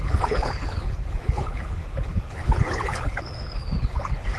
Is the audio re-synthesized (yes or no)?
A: yes